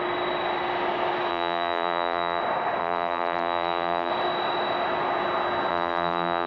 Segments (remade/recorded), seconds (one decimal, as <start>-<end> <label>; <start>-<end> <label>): 0.0-1.3 recorded; 1.3-2.4 remade; 2.4-2.8 recorded; 2.8-4.1 remade; 4.1-5.7 recorded; 5.7-6.5 remade